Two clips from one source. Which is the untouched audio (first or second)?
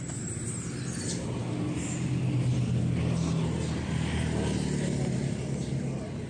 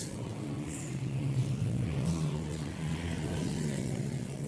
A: first